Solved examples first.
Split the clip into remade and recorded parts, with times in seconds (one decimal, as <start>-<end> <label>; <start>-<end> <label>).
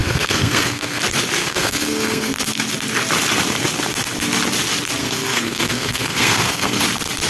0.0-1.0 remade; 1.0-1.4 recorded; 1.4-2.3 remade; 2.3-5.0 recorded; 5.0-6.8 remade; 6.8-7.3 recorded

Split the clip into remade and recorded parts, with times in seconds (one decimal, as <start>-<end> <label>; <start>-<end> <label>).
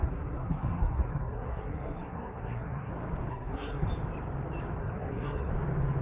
0.0-2.9 remade; 2.9-3.3 recorded; 3.3-3.9 remade; 3.9-4.8 recorded; 4.8-5.5 remade; 5.5-6.0 recorded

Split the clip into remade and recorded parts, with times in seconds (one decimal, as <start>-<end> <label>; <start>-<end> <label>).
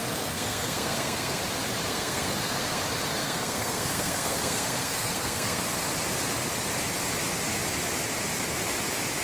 0.0-1.4 remade; 1.4-1.9 recorded; 1.9-2.8 remade; 2.8-3.2 recorded; 3.2-5.6 remade; 5.6-9.2 recorded